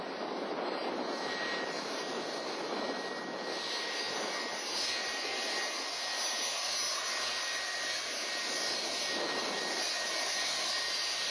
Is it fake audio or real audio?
real